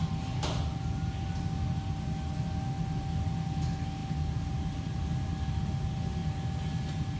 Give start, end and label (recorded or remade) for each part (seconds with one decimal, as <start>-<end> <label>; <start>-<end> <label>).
0.0-7.2 recorded